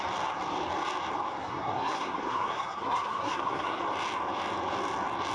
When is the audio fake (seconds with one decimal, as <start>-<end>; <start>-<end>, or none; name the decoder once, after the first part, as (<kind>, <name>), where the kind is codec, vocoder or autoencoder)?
1.4-3.8 (codec, SNAC)